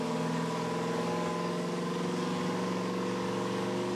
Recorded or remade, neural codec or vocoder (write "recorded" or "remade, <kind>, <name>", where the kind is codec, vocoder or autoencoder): remade, codec, DAC